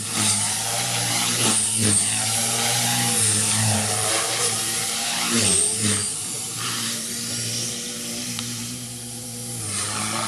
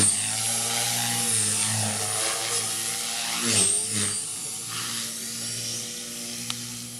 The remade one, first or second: first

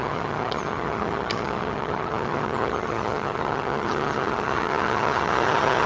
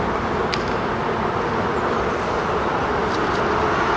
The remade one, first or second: first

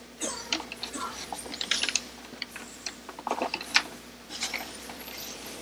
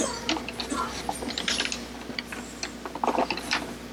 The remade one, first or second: first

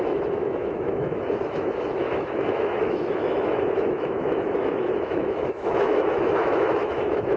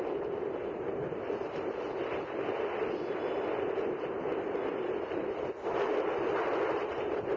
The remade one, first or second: first